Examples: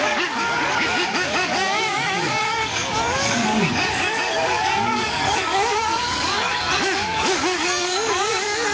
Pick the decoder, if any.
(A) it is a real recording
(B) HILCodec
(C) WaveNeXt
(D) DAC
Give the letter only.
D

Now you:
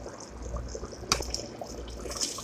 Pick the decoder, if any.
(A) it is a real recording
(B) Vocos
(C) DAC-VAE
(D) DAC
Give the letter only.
A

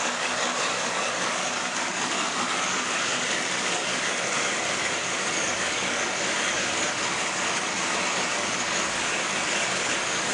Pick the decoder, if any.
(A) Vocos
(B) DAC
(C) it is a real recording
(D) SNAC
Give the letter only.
B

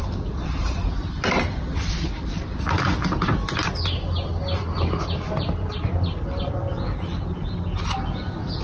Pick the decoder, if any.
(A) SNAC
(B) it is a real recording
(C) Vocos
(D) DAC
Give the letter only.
B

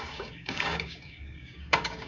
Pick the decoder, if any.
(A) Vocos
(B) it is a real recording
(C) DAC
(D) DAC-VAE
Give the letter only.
C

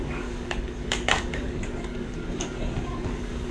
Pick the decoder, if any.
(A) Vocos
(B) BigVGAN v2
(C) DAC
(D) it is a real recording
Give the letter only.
C